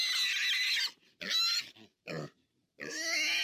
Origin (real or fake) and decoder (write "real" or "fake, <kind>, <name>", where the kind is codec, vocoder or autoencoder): real